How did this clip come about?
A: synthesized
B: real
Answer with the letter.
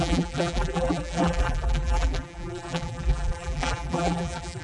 A